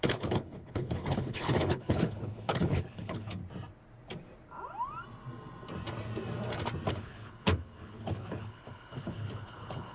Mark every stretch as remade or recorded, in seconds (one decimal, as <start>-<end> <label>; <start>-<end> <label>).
0.0-3.4 remade; 3.4-6.9 recorded; 6.9-9.9 remade

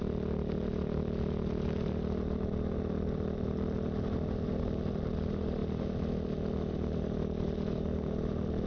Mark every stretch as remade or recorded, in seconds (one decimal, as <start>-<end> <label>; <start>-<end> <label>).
0.0-8.7 recorded

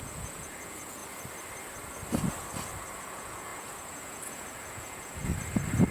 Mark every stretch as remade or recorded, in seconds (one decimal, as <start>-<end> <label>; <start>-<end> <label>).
0.0-1.0 remade; 1.0-3.0 recorded; 3.0-5.3 remade; 5.3-5.9 recorded

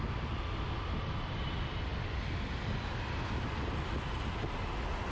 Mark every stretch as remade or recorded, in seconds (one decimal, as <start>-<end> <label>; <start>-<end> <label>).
0.0-5.1 recorded

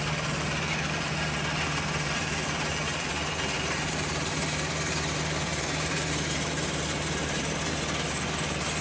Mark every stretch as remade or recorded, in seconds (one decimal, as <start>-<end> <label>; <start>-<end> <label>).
0.0-8.8 remade